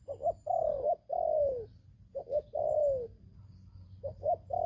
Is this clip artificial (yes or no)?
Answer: no